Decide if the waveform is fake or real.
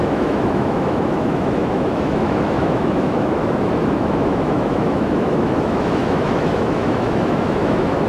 fake